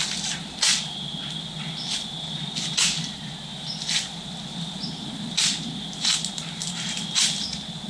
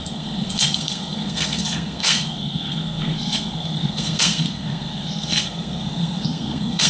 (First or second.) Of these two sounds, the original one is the first